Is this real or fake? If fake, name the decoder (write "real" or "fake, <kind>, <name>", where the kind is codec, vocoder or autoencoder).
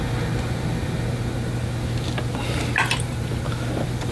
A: real